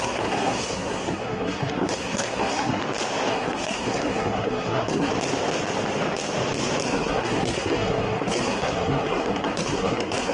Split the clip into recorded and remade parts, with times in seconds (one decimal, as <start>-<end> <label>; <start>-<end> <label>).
0.0-2.8 remade; 2.8-3.3 recorded; 3.3-5.1 remade; 5.1-6.8 recorded; 6.8-10.3 remade